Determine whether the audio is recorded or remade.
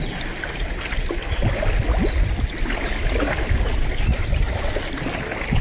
recorded